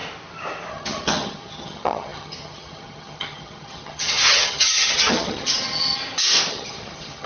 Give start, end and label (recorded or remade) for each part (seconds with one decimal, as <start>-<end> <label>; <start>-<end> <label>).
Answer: 0.0-0.7 recorded; 0.7-6.0 remade; 6.0-6.5 recorded; 6.5-7.3 remade